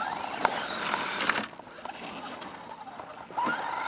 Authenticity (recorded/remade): recorded